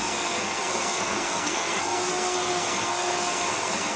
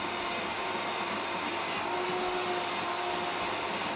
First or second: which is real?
second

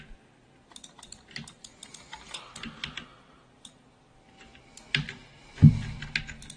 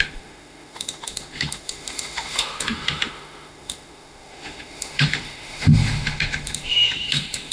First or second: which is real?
first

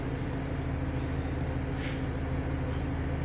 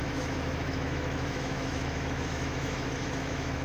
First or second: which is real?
first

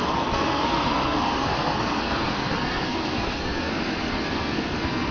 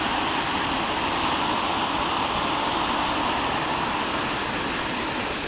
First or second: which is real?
second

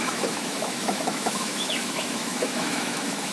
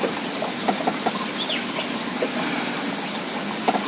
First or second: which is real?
second